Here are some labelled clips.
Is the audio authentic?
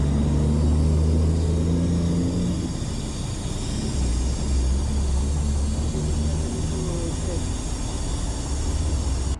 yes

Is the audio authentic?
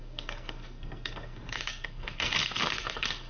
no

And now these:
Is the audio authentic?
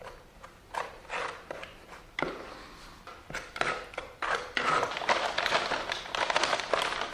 no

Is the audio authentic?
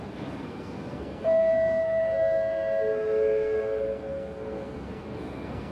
no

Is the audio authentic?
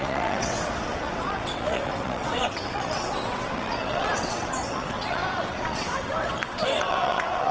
no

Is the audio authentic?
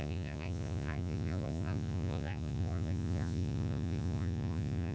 no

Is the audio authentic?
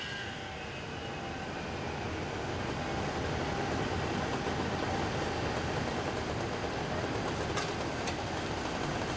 yes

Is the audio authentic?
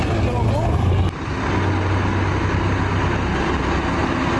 yes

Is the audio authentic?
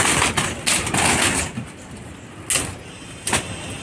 yes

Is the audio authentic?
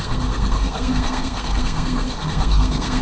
no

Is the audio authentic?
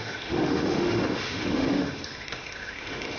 no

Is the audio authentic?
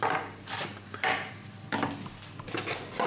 yes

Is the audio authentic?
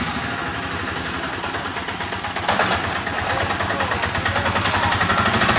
yes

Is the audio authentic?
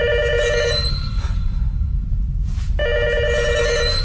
yes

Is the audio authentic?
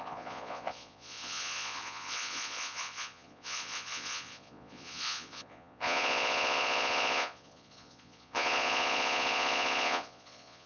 no